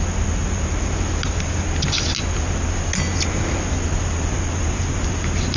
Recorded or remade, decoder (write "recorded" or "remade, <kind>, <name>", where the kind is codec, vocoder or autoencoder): recorded